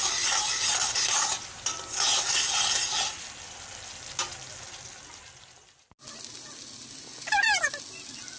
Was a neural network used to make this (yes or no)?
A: no